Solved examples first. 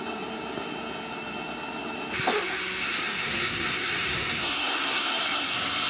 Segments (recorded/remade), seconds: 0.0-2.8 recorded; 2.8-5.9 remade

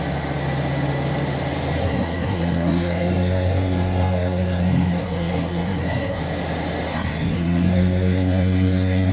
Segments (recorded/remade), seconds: 0.0-1.8 recorded; 1.8-6.2 remade; 6.2-6.9 recorded; 6.9-9.1 remade

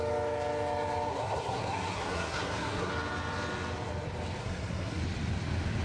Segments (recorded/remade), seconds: 0.0-1.1 recorded; 1.1-2.9 remade; 2.9-4.4 recorded; 4.4-5.0 remade; 5.0-5.8 recorded

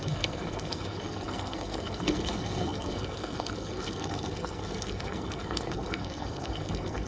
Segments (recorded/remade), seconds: 0.0-7.1 remade